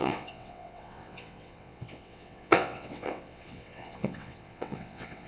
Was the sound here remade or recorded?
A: remade